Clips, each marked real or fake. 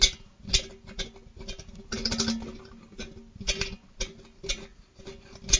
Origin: real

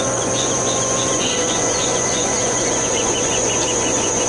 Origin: fake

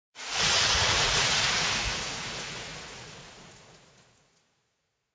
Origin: fake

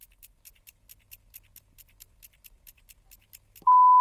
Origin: real